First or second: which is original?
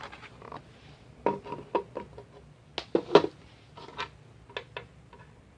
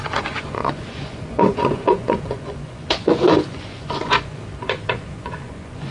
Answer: first